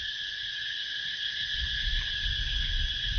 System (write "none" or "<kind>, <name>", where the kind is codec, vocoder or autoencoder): none